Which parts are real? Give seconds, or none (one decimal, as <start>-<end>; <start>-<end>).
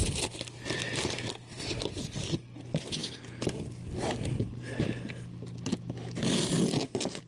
0.0-7.3